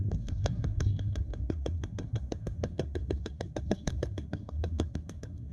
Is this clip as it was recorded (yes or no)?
no